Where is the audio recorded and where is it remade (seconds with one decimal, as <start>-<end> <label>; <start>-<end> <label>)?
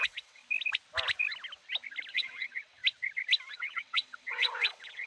0.0-0.4 remade; 0.4-2.1 recorded; 2.1-2.8 remade; 2.8-3.5 recorded; 3.5-5.1 remade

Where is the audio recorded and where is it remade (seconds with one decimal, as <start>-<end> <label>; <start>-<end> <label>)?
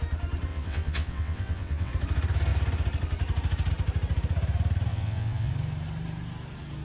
0.0-0.5 recorded; 0.5-1.9 remade; 1.9-4.9 recorded; 4.9-5.5 remade; 5.5-6.8 recorded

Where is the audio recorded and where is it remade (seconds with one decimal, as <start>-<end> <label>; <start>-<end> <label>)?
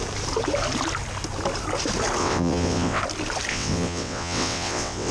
0.0-2.2 recorded; 2.2-3.0 remade; 3.0-3.5 recorded; 3.5-5.1 remade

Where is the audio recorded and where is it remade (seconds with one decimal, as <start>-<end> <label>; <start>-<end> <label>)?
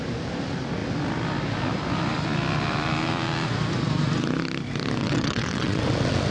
0.0-5.0 recorded; 5.0-5.8 remade; 5.8-6.3 recorded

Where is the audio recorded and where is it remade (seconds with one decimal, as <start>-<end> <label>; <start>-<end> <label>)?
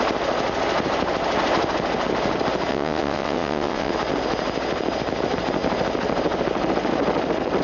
0.0-2.7 recorded; 2.7-3.9 remade; 3.9-7.6 recorded